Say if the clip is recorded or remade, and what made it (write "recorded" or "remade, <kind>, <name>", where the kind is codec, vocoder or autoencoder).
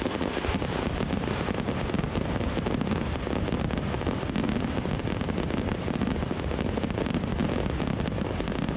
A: recorded